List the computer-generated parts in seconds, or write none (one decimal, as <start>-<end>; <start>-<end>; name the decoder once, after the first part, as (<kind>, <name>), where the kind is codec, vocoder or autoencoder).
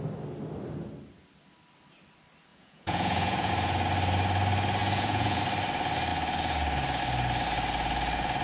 2.5-3.5 (vocoder, Vocos); 4.8-5.4